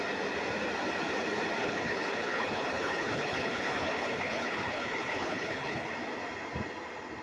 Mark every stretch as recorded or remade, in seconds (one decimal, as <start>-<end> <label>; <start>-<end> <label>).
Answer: 0.0-1.6 recorded; 1.6-5.9 remade; 5.9-7.2 recorded